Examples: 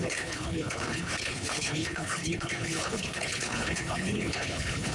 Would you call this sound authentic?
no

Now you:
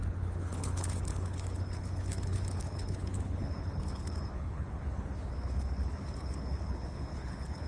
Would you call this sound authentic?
no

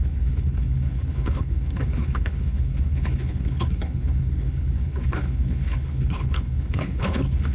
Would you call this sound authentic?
no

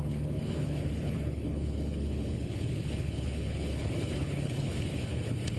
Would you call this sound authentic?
no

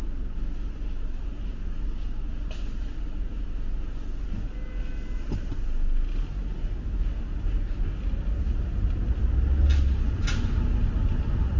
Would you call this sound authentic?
yes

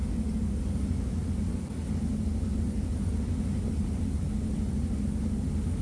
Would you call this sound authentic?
yes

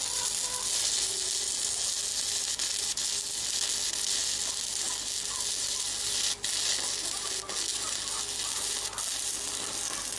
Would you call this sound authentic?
yes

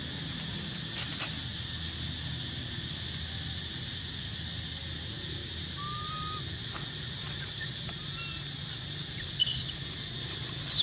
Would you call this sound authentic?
yes